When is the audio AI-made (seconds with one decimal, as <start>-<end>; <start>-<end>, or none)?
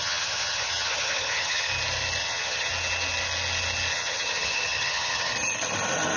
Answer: 0.0-1.7; 2.2-2.7; 3.9-5.3